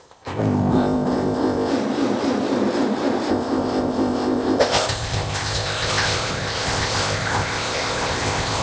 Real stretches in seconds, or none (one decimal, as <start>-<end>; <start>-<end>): 1.7-3.3